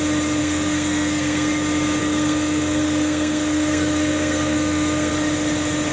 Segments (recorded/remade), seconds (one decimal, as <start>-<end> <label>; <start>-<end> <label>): 0.0-0.4 recorded; 0.4-1.5 remade; 1.5-2.0 recorded; 2.0-5.1 remade; 5.1-5.9 recorded